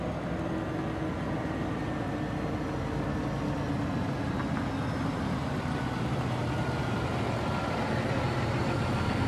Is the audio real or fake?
real